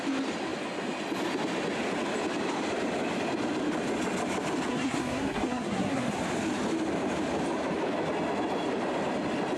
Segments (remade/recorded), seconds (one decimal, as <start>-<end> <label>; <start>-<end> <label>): 0.0-4.7 recorded; 4.7-6.2 remade; 6.2-9.6 recorded